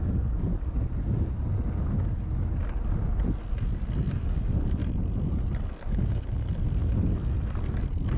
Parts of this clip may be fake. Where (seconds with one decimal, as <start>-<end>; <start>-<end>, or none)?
0.0-0.5; 4.1-4.8; 5.9-6.4